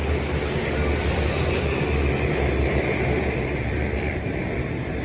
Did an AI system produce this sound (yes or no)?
yes